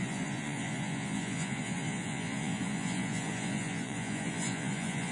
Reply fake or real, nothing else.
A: fake